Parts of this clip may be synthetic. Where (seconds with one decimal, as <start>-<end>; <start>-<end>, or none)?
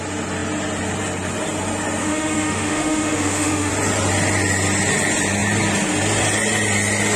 2.0-3.7